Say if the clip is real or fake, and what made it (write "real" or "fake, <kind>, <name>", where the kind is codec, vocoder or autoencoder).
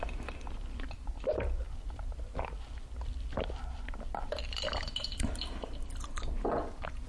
fake, vocoder, BigVGAN v2